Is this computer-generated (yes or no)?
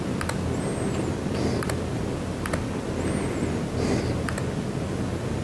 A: no